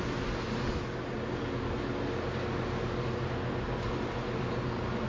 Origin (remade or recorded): recorded